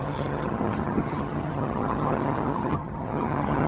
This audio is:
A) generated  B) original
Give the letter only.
A